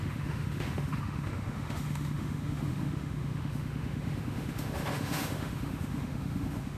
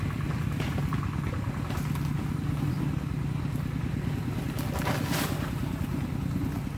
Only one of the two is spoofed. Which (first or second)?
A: first